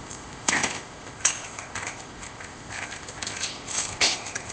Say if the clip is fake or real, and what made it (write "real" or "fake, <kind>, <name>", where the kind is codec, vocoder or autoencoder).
fake, codec, ZipCodec